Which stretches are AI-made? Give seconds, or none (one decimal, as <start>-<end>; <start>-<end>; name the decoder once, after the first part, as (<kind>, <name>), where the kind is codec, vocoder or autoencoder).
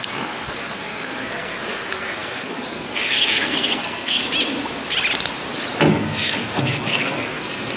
0.0-4.2 (codec, SNAC); 5.9-7.8